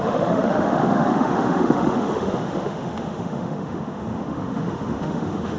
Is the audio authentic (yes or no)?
no